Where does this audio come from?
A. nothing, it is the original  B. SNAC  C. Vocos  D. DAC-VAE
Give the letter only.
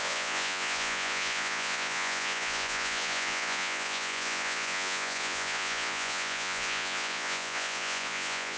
C